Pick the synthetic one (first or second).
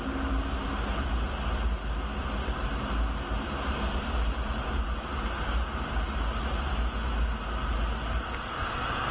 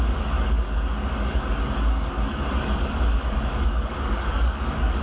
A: second